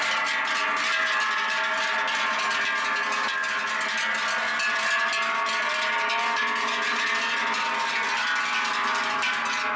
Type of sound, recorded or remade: recorded